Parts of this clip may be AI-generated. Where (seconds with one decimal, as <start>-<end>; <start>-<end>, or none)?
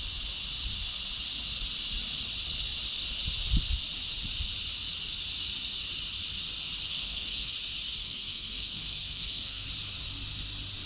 6.9-7.5; 8.0-9.7